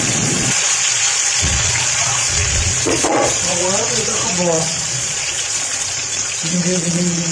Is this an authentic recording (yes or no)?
no